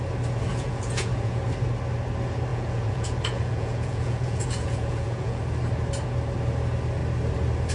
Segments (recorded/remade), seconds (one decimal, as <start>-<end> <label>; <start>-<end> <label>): 0.0-0.5 recorded; 0.5-1.4 remade; 1.4-2.5 recorded; 2.5-5.4 remade; 5.4-7.7 recorded